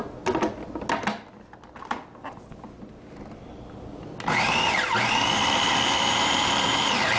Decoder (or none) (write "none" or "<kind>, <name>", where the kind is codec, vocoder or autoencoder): none